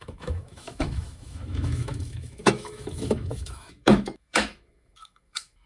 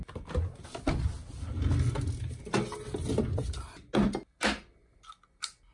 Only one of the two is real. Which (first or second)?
second